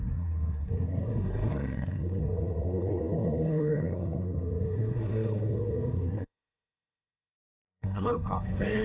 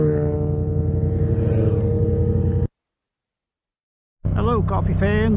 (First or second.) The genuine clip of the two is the second